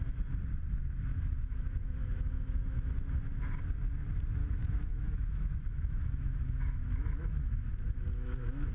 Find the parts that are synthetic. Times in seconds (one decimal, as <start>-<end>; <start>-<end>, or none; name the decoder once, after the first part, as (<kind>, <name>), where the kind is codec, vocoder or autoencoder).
1.1-2.9 (autoencoder, DAC-VAE); 4.4-8.7